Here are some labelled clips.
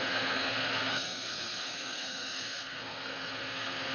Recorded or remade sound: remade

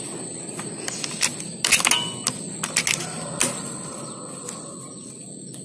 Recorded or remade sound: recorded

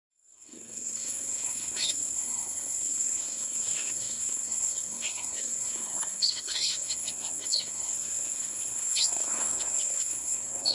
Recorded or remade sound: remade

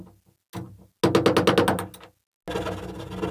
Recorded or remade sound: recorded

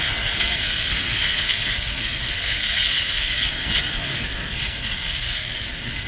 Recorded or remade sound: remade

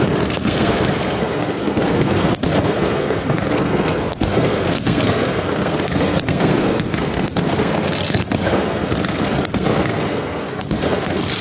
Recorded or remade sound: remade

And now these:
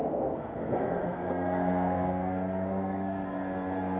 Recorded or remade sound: remade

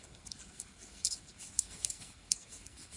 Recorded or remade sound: remade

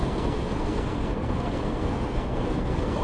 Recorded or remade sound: remade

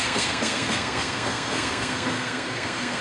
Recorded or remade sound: remade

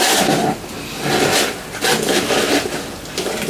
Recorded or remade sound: recorded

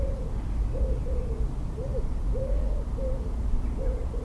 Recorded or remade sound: recorded